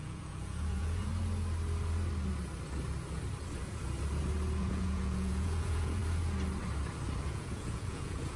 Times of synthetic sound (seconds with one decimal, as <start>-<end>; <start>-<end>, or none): 0.0-1.1; 4.6-6.0; 7.2-8.4